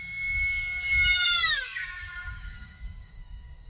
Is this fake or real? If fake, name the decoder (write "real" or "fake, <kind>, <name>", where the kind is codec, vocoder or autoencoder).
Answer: fake, codec, DAC